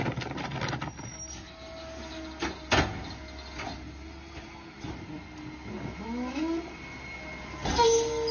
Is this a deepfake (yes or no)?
no